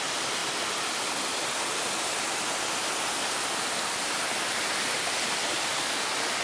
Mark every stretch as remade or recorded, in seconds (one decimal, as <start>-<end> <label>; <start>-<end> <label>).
0.0-6.4 recorded